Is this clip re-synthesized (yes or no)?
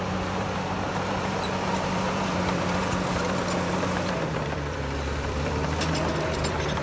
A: yes